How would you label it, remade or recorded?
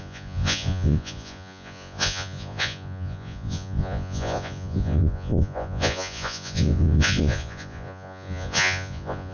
remade